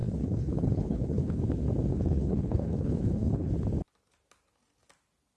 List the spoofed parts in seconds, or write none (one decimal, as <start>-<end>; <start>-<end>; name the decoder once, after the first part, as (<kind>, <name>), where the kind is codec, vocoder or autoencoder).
0.0-1.4 (codec, HILCodec); 1.9-3.5